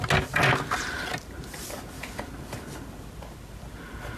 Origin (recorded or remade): recorded